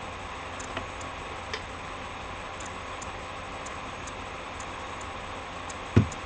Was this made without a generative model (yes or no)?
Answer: yes